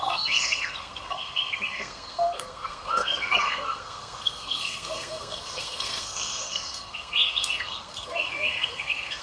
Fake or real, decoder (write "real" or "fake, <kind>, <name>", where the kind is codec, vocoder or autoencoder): fake, codec, SNAC